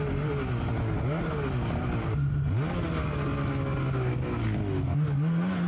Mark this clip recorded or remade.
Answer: recorded